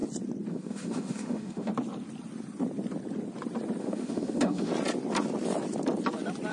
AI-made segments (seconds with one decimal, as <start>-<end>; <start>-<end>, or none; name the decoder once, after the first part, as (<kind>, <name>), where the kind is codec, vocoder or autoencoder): 0.5-1.7 (autoencoder, DAC-VAE); 3.8-4.7